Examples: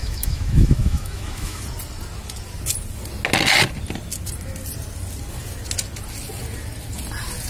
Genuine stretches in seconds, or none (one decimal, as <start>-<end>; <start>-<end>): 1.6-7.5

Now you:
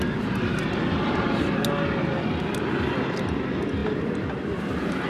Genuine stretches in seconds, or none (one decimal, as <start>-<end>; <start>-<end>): 0.0-5.1

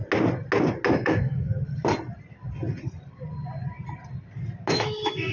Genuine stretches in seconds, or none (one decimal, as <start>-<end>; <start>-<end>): 0.0-0.9; 1.5-4.7

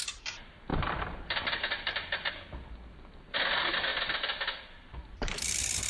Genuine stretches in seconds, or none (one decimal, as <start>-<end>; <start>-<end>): 0.0-5.9